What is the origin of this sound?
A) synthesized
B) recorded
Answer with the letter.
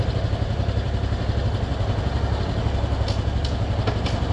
B